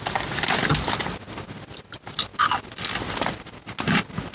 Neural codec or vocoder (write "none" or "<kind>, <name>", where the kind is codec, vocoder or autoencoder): none